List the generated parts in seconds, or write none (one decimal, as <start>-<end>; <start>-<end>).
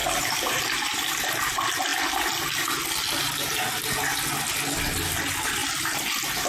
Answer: 0.0-1.2; 5.6-6.1